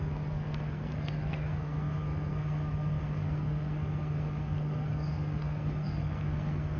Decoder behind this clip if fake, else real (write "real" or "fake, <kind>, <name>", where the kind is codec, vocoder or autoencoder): fake, codec, SNAC